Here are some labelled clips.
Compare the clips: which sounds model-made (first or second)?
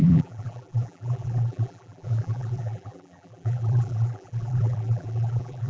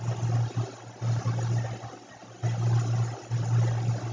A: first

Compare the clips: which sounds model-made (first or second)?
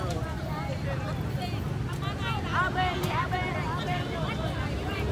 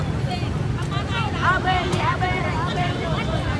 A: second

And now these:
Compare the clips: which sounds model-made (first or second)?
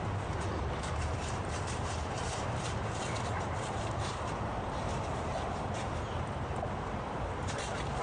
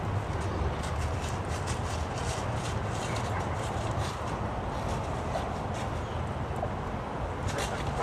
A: first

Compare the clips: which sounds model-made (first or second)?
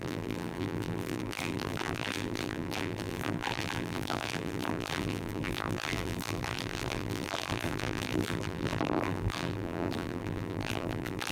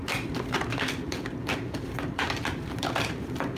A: first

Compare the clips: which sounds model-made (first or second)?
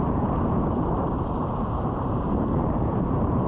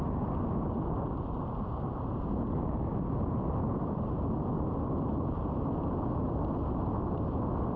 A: first